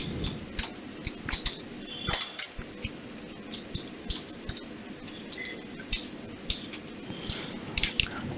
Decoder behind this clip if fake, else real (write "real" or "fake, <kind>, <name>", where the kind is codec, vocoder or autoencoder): real